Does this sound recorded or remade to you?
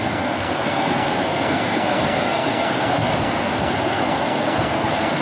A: remade